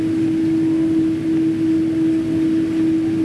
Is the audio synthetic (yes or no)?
no